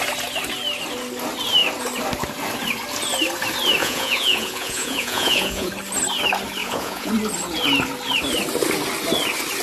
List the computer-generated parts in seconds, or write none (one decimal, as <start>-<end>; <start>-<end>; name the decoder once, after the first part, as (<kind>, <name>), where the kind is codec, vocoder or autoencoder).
3.8-5.7 (vocoder, Vocos); 6.6-7.1